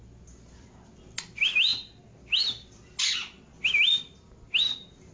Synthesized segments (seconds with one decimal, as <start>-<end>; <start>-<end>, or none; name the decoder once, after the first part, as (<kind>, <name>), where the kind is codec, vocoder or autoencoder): none